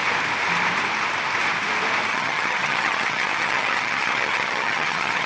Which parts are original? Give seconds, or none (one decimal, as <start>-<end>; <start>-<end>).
0.0-2.1